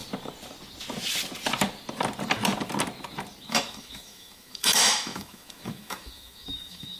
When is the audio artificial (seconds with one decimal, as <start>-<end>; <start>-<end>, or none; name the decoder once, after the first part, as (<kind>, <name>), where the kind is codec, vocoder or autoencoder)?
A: 3.5-7.0 (autoencoder, DAC-VAE)